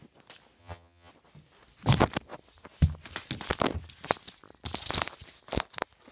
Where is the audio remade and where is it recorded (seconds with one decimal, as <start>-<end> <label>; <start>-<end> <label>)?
0.0-0.6 recorded; 0.6-1.1 remade; 1.1-6.1 recorded